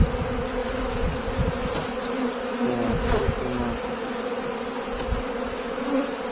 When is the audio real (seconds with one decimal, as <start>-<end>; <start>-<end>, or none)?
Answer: 0.0-6.3